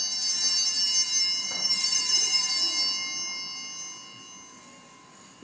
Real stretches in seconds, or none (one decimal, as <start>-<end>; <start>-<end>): 0.0-1.4; 2.5-5.4